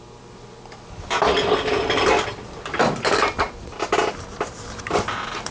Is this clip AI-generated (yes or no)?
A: no